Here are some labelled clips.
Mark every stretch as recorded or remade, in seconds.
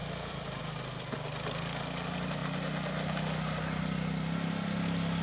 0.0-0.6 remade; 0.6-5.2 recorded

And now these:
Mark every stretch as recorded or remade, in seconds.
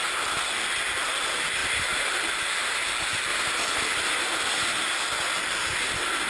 0.0-1.6 recorded; 1.6-2.3 remade; 2.3-3.3 recorded; 3.3-4.9 remade; 4.9-6.3 recorded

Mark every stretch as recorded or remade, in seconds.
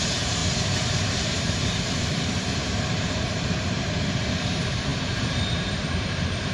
0.0-6.5 remade